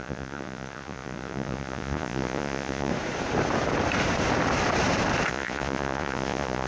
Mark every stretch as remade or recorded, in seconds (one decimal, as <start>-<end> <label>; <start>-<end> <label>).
0.0-2.9 remade; 2.9-5.3 recorded; 5.3-6.7 remade